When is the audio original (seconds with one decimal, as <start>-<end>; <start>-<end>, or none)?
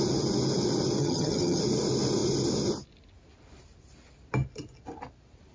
0.0-1.0; 1.6-5.5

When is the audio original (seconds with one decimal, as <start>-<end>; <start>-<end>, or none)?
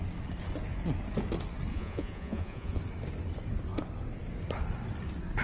0.0-1.7; 2.8-5.4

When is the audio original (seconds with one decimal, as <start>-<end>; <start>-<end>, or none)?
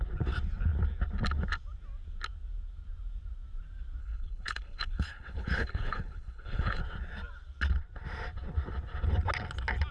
0.0-4.0; 6.8-9.9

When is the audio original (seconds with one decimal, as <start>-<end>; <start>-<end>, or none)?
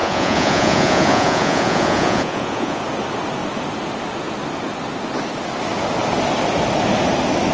2.8-7.5